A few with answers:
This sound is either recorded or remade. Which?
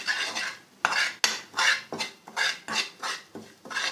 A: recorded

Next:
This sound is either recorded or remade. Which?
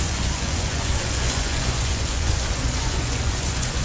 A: remade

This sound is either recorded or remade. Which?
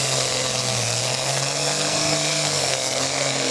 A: remade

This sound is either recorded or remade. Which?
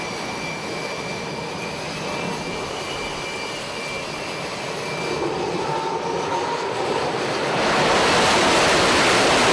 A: recorded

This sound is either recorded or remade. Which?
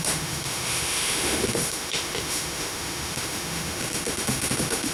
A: remade